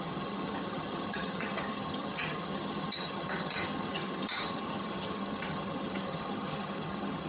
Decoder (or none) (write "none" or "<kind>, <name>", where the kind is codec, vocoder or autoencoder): vocoder, HiFi-GAN